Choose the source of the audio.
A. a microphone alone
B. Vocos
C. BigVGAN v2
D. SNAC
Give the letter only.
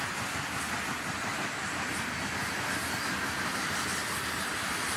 A